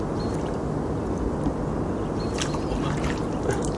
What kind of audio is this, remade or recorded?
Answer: recorded